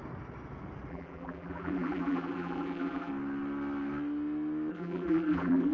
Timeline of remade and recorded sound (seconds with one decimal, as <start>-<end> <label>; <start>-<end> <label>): 0.0-0.9 recorded; 0.9-3.1 remade; 3.1-4.7 recorded; 4.7-5.7 remade